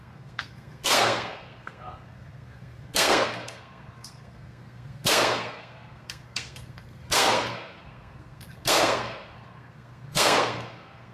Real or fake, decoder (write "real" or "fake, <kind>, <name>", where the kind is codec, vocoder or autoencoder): fake, codec, SNAC